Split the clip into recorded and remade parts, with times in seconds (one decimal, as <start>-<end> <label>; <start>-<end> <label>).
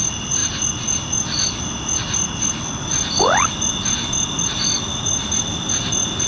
0.0-6.3 recorded